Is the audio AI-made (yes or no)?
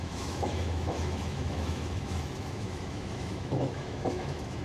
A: yes